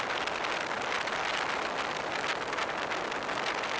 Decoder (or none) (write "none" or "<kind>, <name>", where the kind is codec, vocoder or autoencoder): none